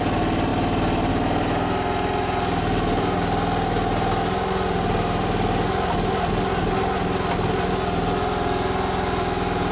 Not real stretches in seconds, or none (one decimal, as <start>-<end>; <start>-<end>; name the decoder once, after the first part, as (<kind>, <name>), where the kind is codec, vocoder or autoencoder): none